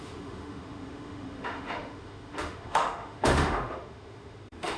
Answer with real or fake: fake